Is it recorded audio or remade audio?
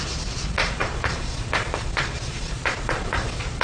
remade